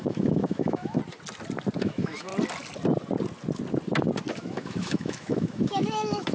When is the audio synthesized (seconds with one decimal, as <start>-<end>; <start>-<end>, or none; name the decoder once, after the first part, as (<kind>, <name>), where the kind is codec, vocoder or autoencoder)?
0.0-1.0 (autoencoder, DAC-VAE); 1.8-2.3; 4.3-6.3